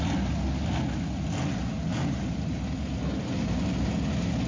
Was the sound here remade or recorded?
recorded